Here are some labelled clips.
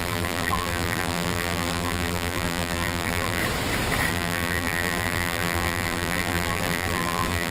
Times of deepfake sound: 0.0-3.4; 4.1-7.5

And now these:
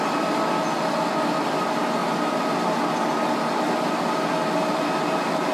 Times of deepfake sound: none

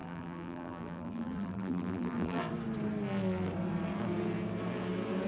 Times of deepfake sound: 0.0-2.4

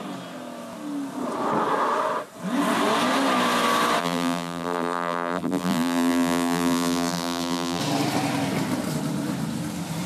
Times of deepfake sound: 4.0-7.8

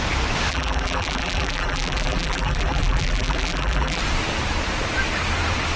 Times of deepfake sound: 0.5-4.0

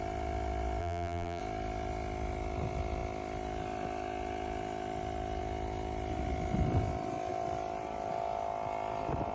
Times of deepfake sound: 0.8-1.4

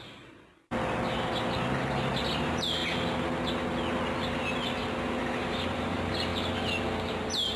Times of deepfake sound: 0.0-0.5; 1.1-2.8; 5.2-6.3; 7.1-7.6

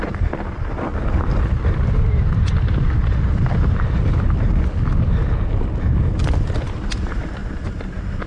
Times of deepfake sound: 0.0-0.9; 1.6-5.2; 6.2-7.4